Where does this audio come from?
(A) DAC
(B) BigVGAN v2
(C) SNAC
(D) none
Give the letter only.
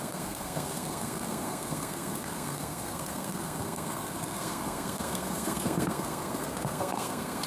C